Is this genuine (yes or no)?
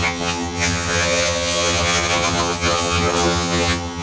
no